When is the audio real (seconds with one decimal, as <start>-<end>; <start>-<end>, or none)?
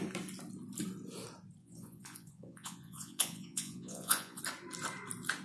0.0-1.6; 4.4-5.4